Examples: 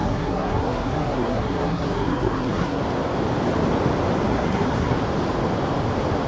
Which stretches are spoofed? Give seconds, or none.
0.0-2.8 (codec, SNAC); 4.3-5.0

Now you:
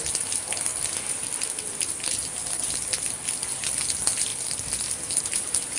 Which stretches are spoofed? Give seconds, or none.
none

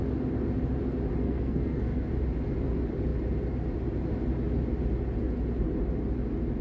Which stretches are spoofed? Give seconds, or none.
1.2-2.1 (codec, SNAC)

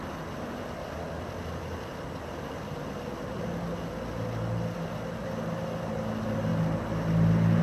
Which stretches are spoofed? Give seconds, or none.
none

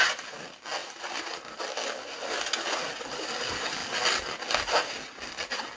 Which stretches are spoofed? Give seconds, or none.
none

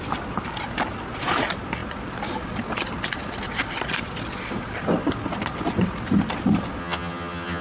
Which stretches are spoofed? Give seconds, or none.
6.8-7.6 (vocoder, HiFi-GAN)

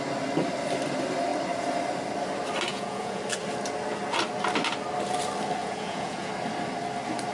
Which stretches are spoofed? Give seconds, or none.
2.7-3.2 (vocoder, Vocos); 5.6-6.3

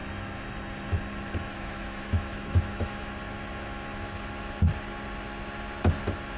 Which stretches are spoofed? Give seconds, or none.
1.5-3.1 (autoencoder, DAC-VAE)